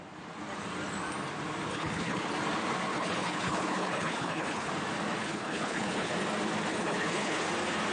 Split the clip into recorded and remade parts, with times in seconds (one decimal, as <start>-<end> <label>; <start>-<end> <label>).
0.0-1.7 recorded; 1.7-2.3 remade; 2.3-2.9 recorded; 2.9-4.7 remade; 4.7-5.2 recorded; 5.2-6.1 remade; 6.1-6.7 recorded; 6.7-7.4 remade; 7.4-7.9 recorded